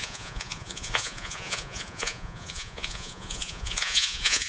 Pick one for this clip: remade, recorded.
remade